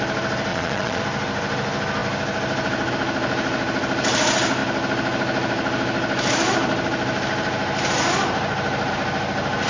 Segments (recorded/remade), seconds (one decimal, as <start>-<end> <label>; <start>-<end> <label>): 0.0-0.5 recorded; 0.5-1.0 remade; 1.0-9.7 recorded